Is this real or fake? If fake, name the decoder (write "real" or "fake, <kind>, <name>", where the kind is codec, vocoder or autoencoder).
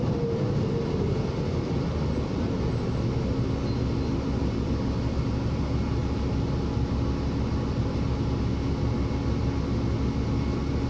real